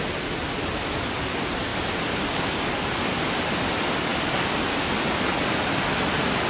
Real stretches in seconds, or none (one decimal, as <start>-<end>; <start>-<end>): 0.0-1.7; 3.5-6.5